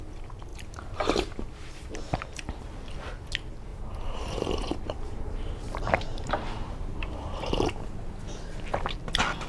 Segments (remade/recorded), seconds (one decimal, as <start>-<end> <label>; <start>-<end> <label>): 0.0-0.5 recorded; 0.5-2.6 remade; 2.6-3.7 recorded; 3.7-7.8 remade; 7.8-9.5 recorded